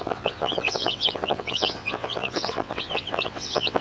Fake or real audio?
fake